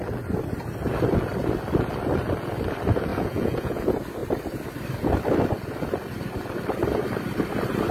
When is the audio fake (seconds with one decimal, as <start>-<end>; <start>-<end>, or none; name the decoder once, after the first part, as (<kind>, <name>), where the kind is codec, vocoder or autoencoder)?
3.1-3.8 (vocoder, Vocos)